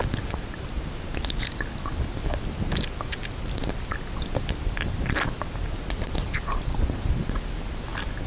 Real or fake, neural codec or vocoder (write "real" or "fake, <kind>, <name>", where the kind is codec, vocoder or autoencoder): real